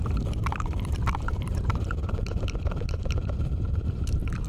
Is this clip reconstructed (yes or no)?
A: yes